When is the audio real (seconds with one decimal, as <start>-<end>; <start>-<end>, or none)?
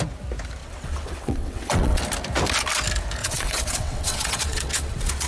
0.0-0.6; 2.0-3.2